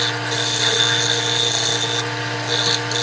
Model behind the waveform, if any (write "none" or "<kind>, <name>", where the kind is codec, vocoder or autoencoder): none